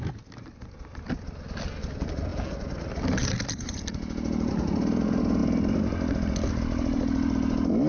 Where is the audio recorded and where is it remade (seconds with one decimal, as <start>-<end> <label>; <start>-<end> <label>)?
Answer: 0.0-7.9 recorded